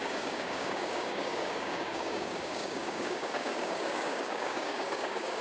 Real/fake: fake